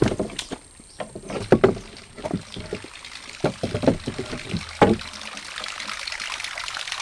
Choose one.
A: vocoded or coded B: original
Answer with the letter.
B